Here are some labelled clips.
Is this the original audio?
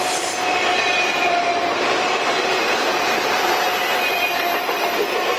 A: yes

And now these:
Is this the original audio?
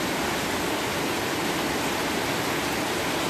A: yes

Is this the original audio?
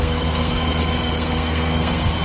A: no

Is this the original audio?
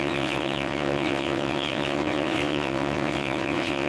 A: no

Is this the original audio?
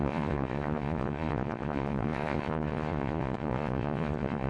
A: no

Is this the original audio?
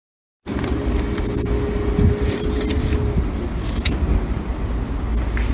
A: yes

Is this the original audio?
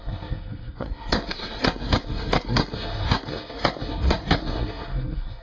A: no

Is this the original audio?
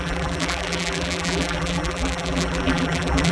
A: no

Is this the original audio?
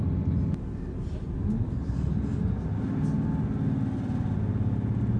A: yes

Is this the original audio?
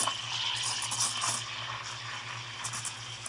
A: yes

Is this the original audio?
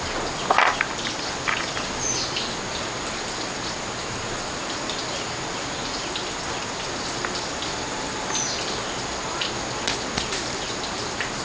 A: yes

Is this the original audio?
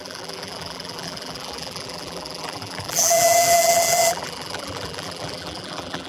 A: no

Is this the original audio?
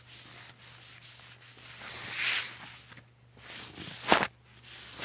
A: yes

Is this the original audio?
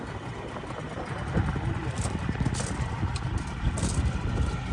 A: yes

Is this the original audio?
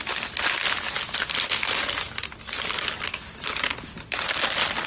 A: yes